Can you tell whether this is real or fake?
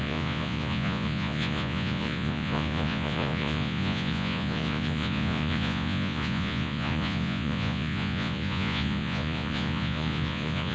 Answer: fake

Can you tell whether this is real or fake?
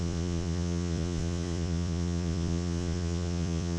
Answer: fake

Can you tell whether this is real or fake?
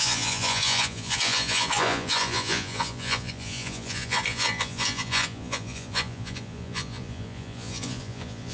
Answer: fake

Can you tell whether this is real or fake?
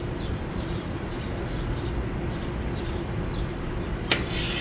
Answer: real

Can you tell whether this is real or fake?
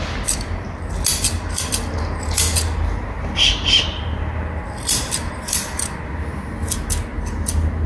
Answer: real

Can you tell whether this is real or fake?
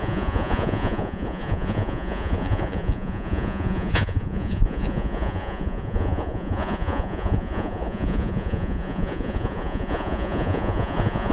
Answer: fake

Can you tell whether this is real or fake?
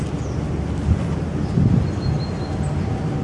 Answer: real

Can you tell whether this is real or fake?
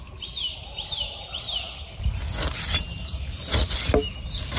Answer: real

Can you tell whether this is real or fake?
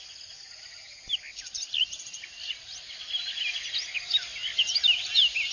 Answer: real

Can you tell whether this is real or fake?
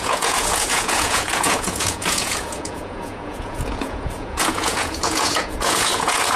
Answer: fake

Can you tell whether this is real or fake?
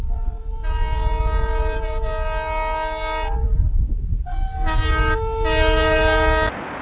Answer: real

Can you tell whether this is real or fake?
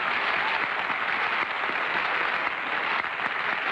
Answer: real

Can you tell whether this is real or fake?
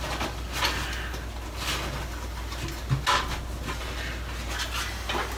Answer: real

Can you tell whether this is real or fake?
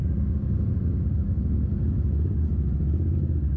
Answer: real